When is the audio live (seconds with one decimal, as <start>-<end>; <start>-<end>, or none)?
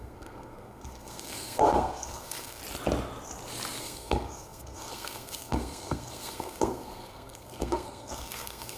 2.6-3.8